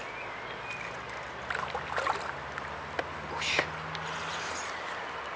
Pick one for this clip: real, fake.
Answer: real